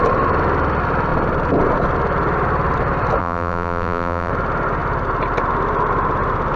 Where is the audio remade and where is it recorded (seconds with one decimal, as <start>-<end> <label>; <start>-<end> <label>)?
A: 0.0-3.2 recorded; 3.2-4.3 remade; 4.3-6.6 recorded